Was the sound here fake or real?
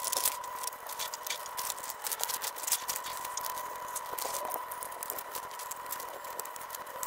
real